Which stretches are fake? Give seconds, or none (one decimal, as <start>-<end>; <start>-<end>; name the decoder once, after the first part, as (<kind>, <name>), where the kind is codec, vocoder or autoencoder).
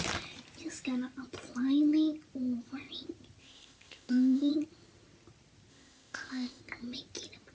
3.4-4.5 (codec, ZipCodec); 5.7-6.6